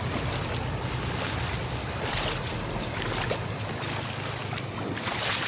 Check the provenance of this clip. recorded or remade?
recorded